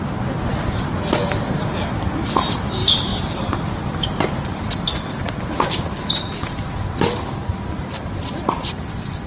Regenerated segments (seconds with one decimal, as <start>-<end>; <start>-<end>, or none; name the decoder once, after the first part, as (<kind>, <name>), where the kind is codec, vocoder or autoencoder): none